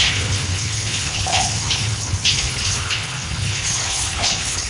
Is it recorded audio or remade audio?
remade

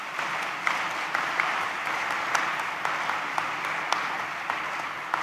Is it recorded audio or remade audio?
recorded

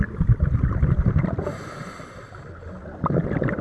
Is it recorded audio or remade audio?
recorded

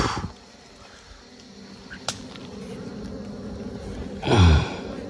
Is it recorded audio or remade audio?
recorded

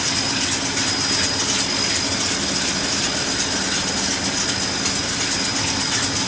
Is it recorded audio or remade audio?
recorded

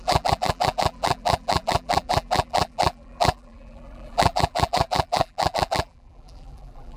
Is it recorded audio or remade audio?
remade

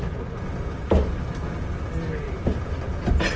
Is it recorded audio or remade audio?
recorded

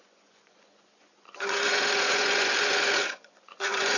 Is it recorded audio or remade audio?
remade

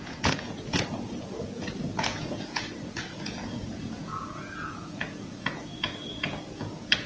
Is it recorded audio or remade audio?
remade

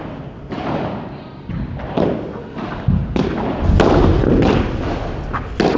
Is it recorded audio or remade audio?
recorded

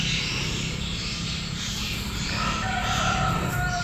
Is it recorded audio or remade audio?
remade